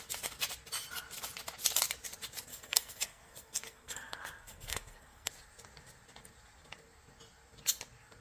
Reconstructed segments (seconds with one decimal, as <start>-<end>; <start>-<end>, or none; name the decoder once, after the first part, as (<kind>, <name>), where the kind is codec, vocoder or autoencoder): 2.5-5.3 (codec, SNAC)